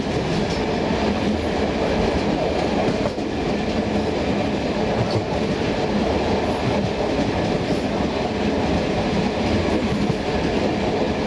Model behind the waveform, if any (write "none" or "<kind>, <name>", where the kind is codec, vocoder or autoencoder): none